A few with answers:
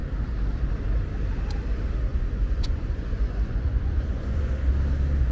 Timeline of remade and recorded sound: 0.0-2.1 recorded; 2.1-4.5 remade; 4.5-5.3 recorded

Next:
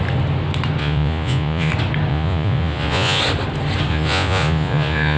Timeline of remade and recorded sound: 0.0-0.8 recorded; 0.8-1.7 remade; 1.7-2.1 recorded; 2.1-3.2 remade; 3.2-3.9 recorded; 3.9-5.2 remade

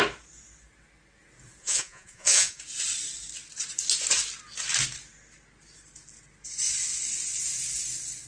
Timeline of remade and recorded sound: 0.0-1.6 recorded; 1.6-2.6 remade; 2.6-8.3 recorded

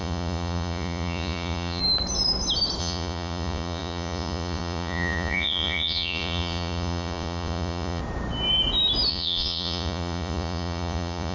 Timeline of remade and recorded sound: 0.0-1.8 remade; 1.8-2.8 recorded; 2.8-8.0 remade; 8.0-9.1 recorded; 9.1-11.3 remade